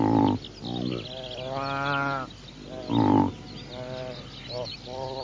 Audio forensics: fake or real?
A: real